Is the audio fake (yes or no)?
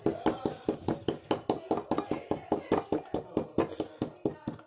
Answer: no